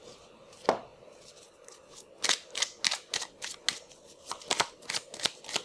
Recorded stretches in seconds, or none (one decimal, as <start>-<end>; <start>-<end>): 0.0-5.6